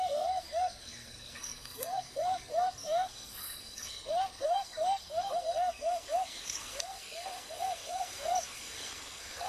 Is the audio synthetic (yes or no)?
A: yes